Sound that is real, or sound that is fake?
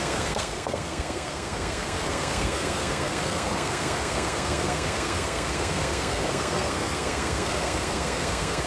fake